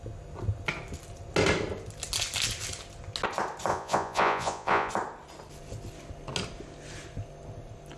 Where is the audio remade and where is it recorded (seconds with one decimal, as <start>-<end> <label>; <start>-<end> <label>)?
0.0-3.7 recorded; 3.7-4.9 remade; 4.9-8.0 recorded